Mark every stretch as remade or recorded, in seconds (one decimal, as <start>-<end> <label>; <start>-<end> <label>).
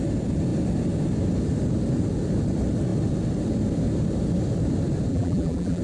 0.0-5.1 recorded; 5.1-5.8 remade